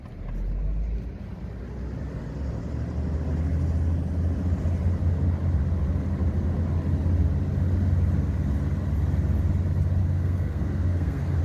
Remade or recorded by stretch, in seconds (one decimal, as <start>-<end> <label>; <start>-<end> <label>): 0.0-10.0 recorded; 10.0-11.4 remade